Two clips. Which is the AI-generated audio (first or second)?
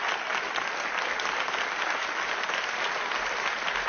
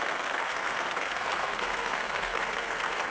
second